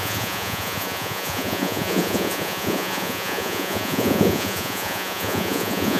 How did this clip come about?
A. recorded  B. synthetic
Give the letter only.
B